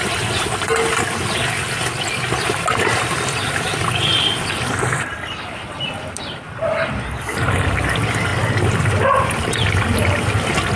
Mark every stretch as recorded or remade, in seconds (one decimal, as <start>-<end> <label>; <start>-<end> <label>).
0.0-10.8 recorded